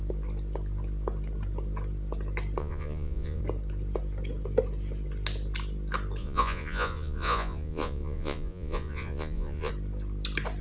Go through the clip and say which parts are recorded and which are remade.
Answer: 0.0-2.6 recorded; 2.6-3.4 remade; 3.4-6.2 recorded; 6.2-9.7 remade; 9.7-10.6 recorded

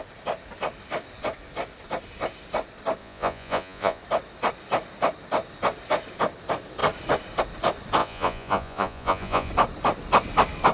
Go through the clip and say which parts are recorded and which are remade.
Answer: 0.0-3.0 recorded; 3.0-4.0 remade; 4.0-8.0 recorded; 8.0-9.5 remade; 9.5-10.7 recorded

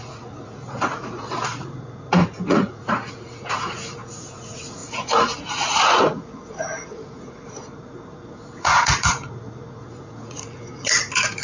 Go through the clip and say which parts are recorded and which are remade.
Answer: 0.0-11.4 remade

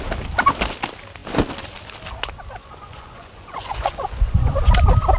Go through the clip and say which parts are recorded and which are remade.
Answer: 0.0-2.6 recorded; 2.6-4.7 remade; 4.7-5.2 recorded

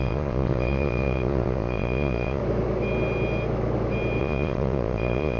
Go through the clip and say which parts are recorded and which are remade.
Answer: 0.0-2.4 remade; 2.4-4.2 recorded; 4.2-5.4 remade